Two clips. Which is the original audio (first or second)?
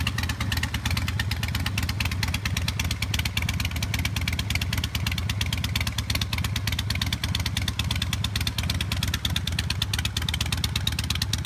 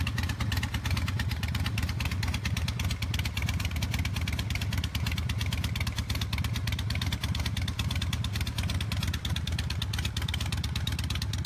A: first